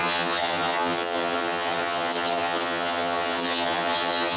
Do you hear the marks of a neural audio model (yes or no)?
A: yes